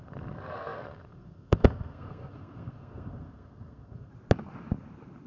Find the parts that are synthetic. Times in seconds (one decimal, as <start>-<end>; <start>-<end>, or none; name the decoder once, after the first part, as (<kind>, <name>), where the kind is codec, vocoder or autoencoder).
0.0-4.1 (codec, SNAC)